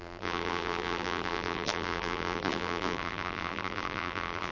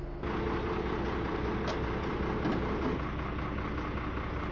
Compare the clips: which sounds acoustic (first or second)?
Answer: second